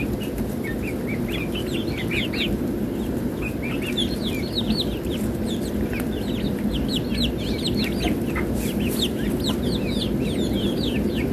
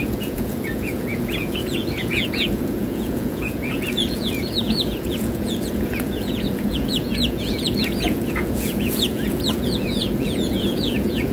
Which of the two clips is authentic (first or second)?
first